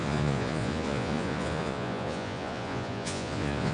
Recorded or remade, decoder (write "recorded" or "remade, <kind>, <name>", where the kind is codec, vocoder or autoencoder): remade, vocoder, Vocos